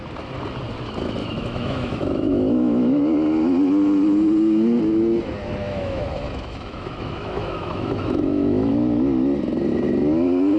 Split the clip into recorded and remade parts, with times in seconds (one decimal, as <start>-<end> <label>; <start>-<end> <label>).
0.0-1.2 recorded; 1.2-3.0 remade; 3.0-5.6 recorded; 5.6-8.7 remade; 8.7-10.6 recorded